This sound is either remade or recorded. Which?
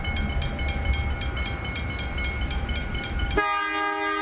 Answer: recorded